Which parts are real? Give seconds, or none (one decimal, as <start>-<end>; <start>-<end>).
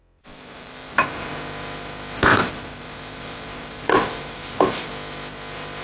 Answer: 1.3-2.3; 4.9-5.8